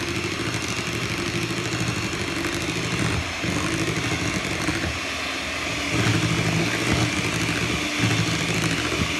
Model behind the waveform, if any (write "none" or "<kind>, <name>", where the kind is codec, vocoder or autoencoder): none